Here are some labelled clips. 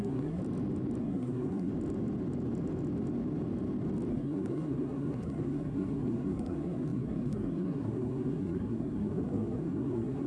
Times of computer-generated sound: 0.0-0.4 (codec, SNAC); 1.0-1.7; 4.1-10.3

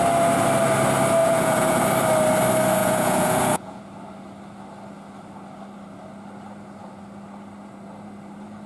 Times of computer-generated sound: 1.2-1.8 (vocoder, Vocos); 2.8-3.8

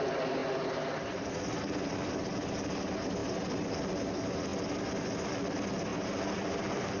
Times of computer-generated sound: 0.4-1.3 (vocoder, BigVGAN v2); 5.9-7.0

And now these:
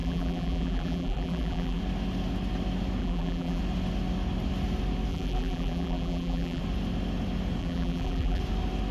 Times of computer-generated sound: 0.0-1.8 (vocoder, BigVGAN v2); 3.0-3.6; 5.1-6.6; 7.6-8.4

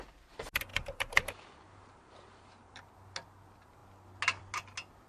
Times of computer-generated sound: 0.7-2.9 (vocoder, BigVGAN v2)

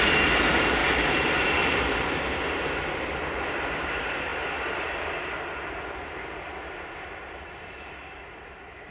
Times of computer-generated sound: none

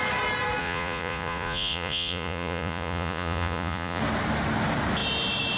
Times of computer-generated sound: 0.6-4.0 (vocoder, Vocos)